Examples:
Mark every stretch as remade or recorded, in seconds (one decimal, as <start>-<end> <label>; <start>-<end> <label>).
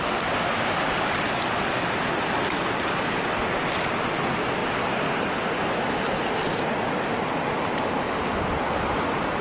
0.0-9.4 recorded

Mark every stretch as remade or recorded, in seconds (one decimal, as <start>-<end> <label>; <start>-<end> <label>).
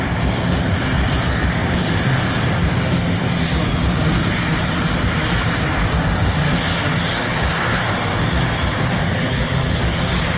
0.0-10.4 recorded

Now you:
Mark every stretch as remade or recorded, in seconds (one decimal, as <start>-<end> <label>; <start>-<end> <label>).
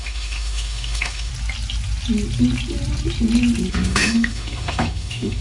0.0-1.3 remade; 1.3-3.7 recorded; 3.7-5.4 remade